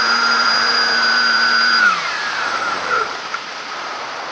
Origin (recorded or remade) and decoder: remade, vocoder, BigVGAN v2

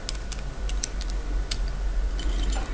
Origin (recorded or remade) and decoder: recorded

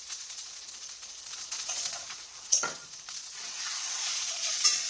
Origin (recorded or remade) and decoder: remade, vocoder, Vocos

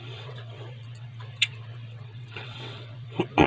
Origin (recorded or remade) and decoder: remade, vocoder, WaveNeXt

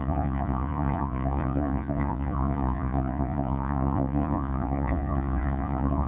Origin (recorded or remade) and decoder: remade, vocoder, Vocos